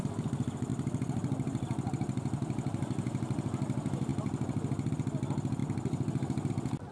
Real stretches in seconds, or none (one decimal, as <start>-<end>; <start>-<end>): 0.0-0.7; 1.9-6.9